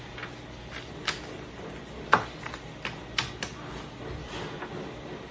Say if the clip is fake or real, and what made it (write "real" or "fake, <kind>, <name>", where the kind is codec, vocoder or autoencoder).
real